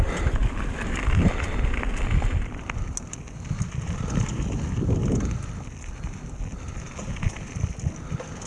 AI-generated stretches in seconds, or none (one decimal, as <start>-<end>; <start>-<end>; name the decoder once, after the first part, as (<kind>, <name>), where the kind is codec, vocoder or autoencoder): none